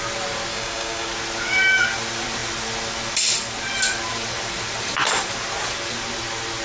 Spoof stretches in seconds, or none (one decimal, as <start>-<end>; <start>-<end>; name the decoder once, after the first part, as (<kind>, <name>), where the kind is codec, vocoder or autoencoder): 0.5-1.1 (codec, DAC)

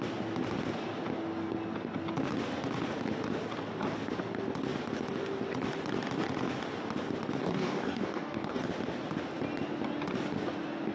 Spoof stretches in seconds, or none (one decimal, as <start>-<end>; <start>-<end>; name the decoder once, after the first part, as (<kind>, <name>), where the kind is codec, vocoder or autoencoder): 7.4-8.6 (codec, DAC)

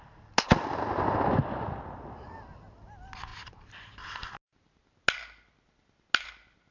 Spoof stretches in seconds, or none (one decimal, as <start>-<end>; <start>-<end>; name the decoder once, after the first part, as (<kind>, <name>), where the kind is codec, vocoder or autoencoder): none

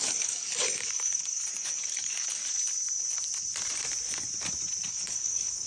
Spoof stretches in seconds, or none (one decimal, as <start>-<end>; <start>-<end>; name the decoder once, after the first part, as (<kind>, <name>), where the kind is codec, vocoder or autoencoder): 0.0-2.4 (codec, DAC); 4.9-5.7

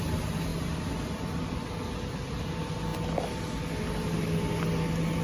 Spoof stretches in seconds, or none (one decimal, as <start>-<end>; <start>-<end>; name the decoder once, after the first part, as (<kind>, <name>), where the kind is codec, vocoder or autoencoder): none

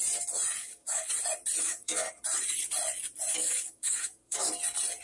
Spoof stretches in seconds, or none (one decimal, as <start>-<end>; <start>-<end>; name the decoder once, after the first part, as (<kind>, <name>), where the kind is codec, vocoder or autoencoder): 0.6-1.1 (codec, DAC); 1.6-2.2; 3.3-4.5

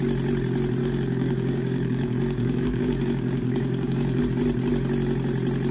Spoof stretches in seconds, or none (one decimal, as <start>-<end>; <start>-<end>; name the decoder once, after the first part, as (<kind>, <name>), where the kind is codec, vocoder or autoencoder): 0.8-4.2 (codec, DAC)

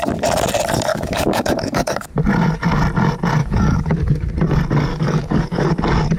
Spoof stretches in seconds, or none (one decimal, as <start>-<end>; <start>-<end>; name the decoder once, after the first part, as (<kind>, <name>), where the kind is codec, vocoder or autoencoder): 0.9-2.1 (codec, DAC); 3.4-4.3; 4.9-5.7